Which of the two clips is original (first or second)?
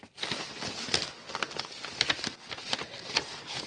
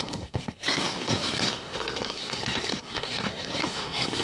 first